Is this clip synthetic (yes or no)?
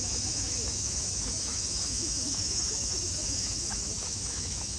yes